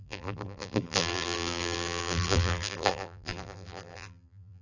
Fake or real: fake